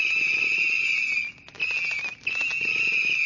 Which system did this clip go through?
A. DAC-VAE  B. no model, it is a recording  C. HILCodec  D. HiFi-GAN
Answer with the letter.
B